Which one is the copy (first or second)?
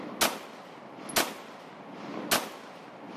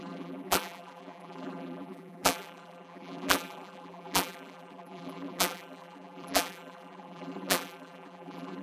second